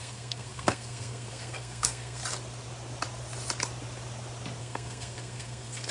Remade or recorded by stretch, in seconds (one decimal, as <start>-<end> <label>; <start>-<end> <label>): 0.0-2.2 remade; 2.2-4.6 recorded; 4.6-5.9 remade

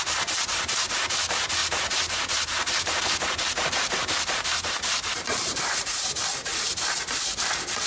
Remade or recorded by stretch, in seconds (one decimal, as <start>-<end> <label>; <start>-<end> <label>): 0.0-1.6 recorded; 1.6-3.0 remade; 3.0-4.0 recorded; 4.0-6.1 remade; 6.1-6.5 recorded; 6.5-7.1 remade; 7.1-7.9 recorded

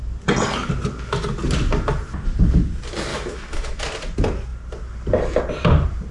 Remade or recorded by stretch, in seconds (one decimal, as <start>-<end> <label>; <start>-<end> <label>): 0.0-3.1 recorded; 3.1-3.8 remade; 3.8-6.1 recorded

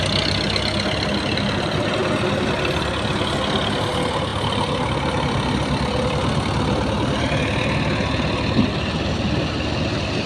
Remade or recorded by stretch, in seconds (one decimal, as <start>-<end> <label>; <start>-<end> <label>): 0.0-10.3 recorded

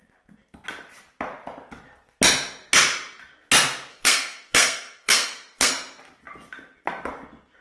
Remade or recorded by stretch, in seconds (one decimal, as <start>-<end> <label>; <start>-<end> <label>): 0.0-3.9 recorded; 3.9-5.7 remade; 5.7-7.6 recorded